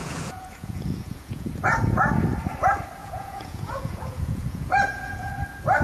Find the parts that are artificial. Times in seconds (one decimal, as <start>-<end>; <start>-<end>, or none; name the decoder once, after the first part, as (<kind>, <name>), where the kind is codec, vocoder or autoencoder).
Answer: 0.0-1.5 (vocoder, Vocos); 3.0-5.3